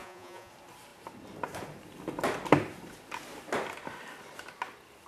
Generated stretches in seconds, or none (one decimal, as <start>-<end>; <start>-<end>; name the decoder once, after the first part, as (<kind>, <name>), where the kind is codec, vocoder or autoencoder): 0.0-0.5 (vocoder, Vocos)